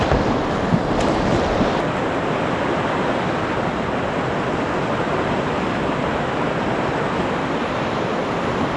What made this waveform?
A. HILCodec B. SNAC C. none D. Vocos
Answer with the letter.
C